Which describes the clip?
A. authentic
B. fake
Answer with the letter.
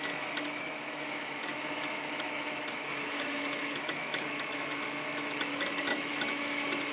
B